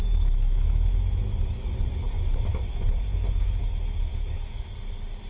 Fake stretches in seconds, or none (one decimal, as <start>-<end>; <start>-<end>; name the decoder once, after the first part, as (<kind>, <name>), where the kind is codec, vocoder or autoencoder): 0.0-1.8 (autoencoder, DAC-VAE); 2.5-3.6; 4.1-4.7